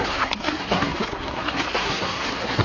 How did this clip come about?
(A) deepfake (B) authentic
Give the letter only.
A